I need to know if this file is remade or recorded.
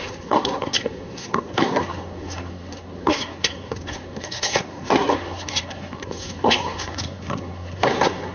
remade